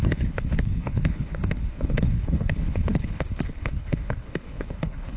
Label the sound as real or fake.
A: fake